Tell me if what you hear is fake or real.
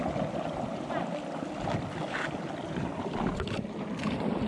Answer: real